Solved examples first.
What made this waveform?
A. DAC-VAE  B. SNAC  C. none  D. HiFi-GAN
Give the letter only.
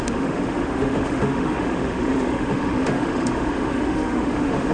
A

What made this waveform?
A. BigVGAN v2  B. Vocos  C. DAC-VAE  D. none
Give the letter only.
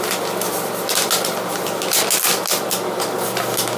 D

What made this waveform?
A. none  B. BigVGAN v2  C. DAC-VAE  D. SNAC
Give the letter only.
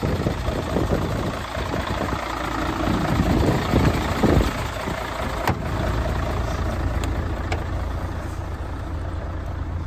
A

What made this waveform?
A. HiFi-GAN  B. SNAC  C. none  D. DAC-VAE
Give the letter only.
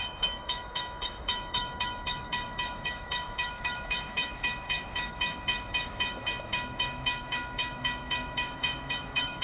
D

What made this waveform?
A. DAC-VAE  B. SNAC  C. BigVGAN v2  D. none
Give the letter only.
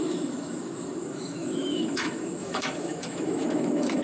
A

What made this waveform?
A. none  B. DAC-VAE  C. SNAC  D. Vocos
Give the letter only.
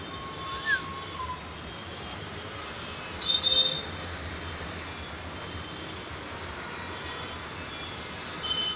A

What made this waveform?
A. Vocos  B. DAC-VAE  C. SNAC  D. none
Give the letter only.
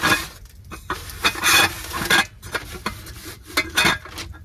D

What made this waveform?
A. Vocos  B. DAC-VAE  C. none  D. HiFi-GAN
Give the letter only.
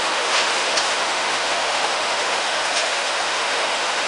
B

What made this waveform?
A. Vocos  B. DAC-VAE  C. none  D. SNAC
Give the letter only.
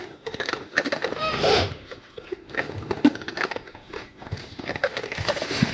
B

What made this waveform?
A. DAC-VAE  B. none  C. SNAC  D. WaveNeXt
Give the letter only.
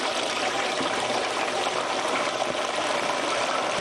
B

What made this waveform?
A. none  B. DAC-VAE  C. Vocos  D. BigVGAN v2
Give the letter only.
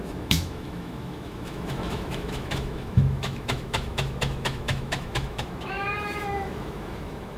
B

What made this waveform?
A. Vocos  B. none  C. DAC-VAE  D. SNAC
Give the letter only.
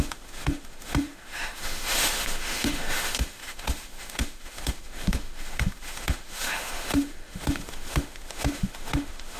C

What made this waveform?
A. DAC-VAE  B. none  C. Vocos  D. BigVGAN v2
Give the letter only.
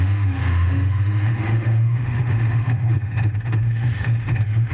A